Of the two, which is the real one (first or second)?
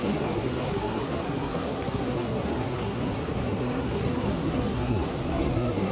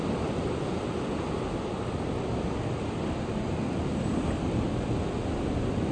second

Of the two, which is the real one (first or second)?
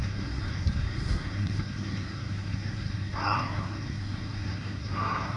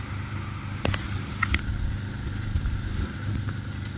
second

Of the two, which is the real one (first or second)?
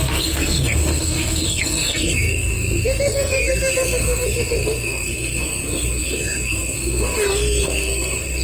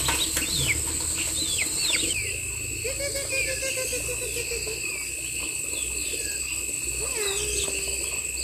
second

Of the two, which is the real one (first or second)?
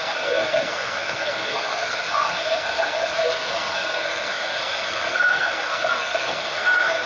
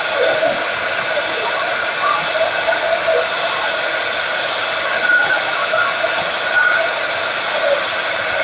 second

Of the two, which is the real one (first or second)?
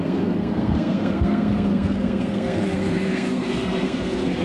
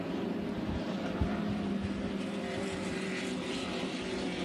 second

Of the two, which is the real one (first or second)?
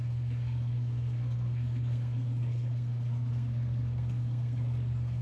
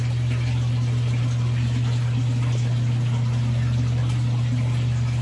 second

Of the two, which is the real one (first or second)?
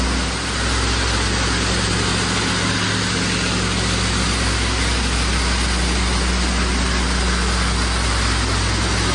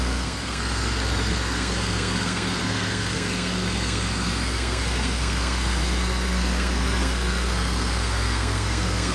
first